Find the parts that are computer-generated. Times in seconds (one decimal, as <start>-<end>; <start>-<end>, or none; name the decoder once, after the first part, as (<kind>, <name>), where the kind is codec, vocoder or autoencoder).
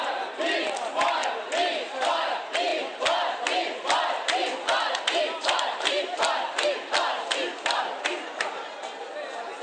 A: none